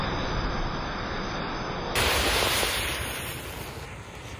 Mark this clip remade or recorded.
recorded